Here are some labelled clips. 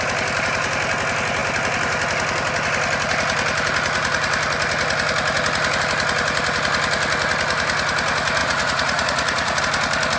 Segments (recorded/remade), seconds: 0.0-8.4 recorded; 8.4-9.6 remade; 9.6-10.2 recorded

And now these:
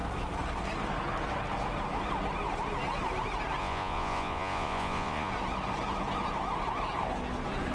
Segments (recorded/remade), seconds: 0.0-3.6 recorded; 3.6-5.3 remade; 5.3-7.7 recorded

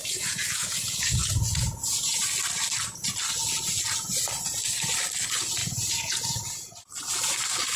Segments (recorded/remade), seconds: 0.0-2.2 remade; 2.2-5.6 recorded; 5.6-6.9 remade; 6.9-7.8 recorded

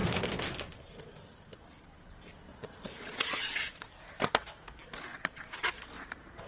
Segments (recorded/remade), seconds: 0.0-2.5 recorded; 2.5-3.9 remade; 3.9-5.1 recorded; 5.1-5.7 remade; 5.7-6.5 recorded

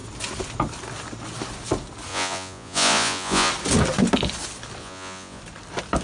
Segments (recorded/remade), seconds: 0.0-2.1 recorded; 2.1-3.5 remade; 3.5-4.8 recorded; 4.8-5.4 remade; 5.4-6.0 recorded

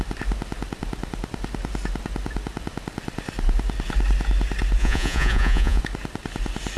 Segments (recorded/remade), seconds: 0.0-4.8 recorded; 4.8-5.8 remade; 5.8-6.8 recorded

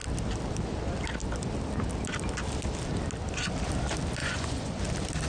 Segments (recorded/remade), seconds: 0.0-4.2 recorded; 4.2-4.8 remade; 4.8-5.3 recorded